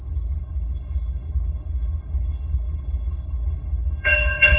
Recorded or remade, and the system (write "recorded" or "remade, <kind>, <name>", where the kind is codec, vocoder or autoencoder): remade, codec, HILCodec